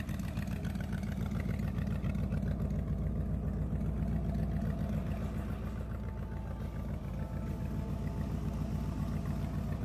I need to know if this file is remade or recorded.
recorded